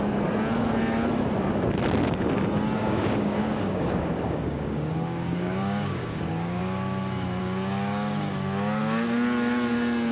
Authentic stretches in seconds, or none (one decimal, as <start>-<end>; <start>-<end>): 0.0-2.8; 6.6-7.4; 8.8-10.1